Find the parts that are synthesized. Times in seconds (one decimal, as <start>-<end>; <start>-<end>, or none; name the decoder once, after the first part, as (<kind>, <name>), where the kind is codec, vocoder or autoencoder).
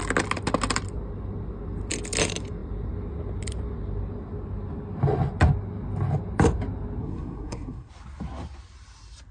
7.0-7.9 (codec, SNAC)